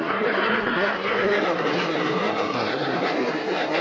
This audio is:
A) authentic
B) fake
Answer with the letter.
B